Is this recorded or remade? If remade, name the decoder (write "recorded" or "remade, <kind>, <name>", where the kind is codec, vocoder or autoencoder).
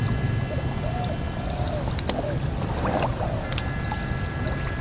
recorded